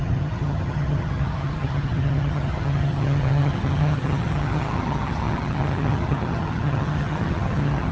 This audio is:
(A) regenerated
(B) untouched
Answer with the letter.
A